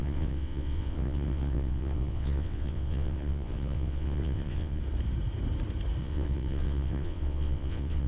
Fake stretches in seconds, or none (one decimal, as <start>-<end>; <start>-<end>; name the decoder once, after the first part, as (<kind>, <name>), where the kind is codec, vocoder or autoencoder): 0.0-4.8 (vocoder, WaveNeXt); 6.0-8.1